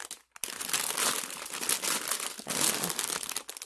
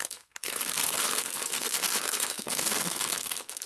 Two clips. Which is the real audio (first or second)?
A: first